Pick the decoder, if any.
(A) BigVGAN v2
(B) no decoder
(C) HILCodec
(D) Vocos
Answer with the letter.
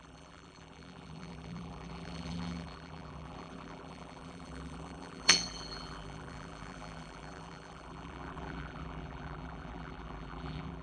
A